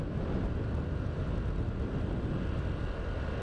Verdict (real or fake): real